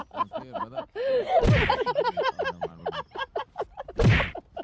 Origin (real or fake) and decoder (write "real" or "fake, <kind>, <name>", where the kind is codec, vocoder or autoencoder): fake, vocoder, BigVGAN v2